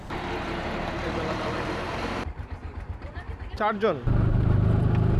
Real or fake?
fake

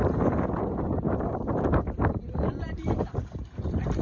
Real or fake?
fake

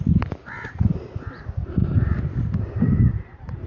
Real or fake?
fake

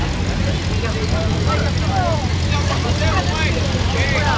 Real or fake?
real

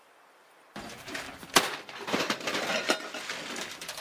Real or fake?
fake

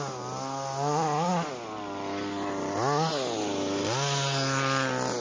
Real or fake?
real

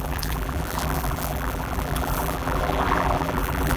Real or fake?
fake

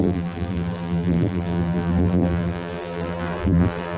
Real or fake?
fake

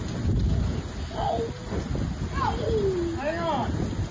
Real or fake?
real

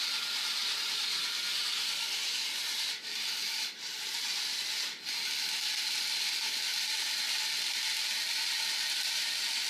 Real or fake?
fake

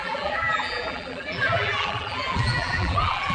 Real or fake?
fake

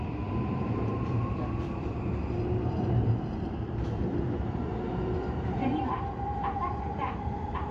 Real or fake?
fake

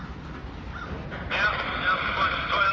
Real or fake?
real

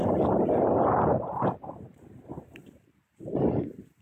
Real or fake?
fake